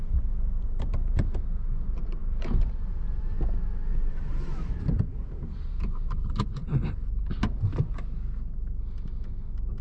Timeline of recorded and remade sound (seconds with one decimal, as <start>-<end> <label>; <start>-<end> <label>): 0.0-3.3 remade; 3.3-3.9 recorded; 3.9-6.6 remade; 6.6-9.8 recorded